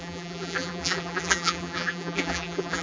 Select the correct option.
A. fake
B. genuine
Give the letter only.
A